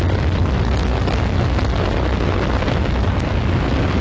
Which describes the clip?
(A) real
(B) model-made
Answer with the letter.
A